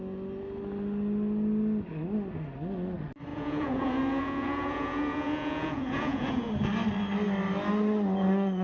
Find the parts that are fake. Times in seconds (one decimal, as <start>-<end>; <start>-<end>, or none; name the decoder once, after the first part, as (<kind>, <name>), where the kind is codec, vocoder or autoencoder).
3.3-6.5 (vocoder, Vocos)